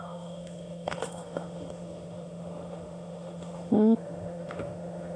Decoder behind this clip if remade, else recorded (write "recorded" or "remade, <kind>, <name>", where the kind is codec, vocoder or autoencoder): remade, autoencoder, DAC-VAE